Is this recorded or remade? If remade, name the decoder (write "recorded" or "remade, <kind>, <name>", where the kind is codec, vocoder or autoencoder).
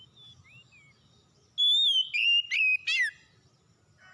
recorded